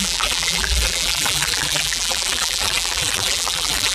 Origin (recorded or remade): remade